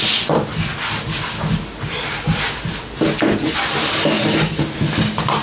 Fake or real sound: real